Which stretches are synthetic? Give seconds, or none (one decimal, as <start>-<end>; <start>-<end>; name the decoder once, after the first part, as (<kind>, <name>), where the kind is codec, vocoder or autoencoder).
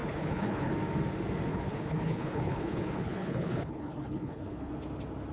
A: 0.0-0.7 (codec, HILCodec); 1.5-4.7